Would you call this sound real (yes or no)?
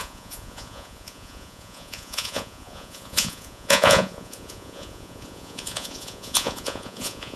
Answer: no